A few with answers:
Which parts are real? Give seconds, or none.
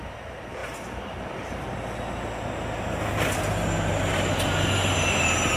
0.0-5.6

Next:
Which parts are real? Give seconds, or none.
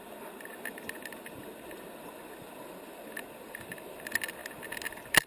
0.0-5.3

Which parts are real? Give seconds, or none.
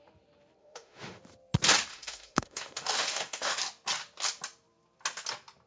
0.0-0.6; 1.2-1.9; 3.6-5.7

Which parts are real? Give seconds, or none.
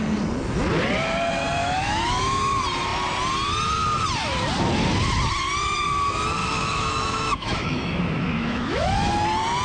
0.0-1.6; 2.4-6.4; 9.1-9.6